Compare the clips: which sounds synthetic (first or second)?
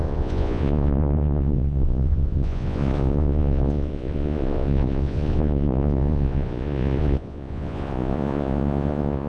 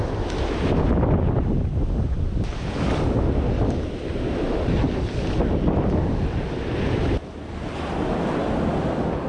first